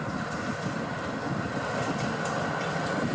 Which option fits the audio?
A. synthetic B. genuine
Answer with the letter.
B